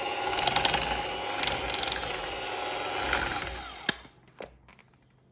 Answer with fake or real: real